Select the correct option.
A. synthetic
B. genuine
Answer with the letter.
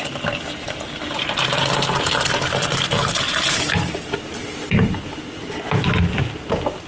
B